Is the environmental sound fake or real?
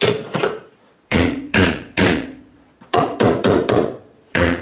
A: fake